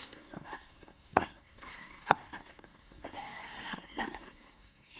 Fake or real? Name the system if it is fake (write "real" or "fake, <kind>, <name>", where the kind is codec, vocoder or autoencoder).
fake, codec, SNAC